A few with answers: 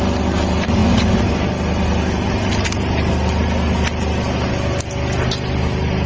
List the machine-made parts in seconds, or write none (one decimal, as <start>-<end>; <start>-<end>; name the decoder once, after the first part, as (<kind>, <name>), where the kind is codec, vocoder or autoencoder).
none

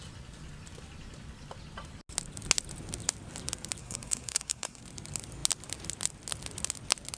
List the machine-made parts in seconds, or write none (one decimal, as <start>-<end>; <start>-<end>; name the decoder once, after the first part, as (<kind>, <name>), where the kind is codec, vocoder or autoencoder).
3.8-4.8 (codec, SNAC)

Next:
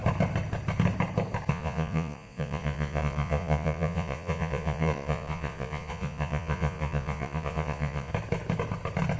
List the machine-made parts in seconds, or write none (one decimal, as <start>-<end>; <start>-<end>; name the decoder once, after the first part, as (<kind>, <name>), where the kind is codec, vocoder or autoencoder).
1.5-8.1 (vocoder, Vocos)

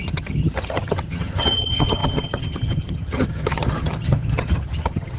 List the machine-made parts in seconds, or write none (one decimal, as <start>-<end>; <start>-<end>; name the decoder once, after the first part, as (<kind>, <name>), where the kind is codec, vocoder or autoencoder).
0.0-5.2 (vocoder, HiFi-GAN)

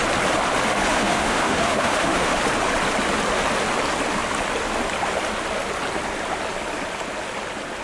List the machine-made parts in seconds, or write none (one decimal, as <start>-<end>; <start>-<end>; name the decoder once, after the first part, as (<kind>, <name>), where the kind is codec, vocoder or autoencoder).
0.9-2.4 (autoencoder, DAC-VAE)